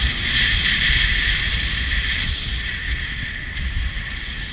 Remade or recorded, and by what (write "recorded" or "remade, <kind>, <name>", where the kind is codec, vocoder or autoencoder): remade, vocoder, BigVGAN v2